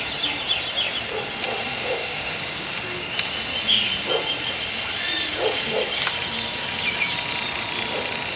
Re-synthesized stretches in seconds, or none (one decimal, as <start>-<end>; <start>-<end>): 2.0-2.7